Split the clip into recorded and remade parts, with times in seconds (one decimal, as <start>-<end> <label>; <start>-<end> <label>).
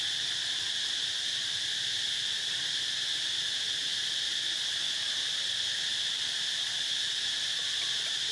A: 0.0-8.3 recorded